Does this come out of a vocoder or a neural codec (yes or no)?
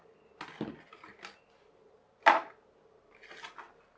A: no